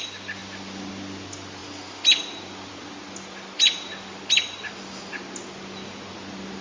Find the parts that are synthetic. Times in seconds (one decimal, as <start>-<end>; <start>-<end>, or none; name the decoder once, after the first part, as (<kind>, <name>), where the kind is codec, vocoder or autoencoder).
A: none